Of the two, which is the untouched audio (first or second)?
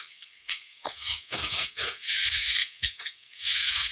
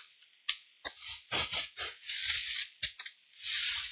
second